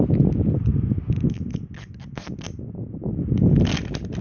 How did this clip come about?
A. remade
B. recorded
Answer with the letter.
B